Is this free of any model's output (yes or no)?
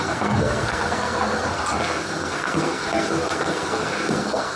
no